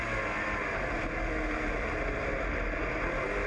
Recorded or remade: recorded